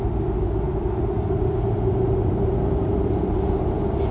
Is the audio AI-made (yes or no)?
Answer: no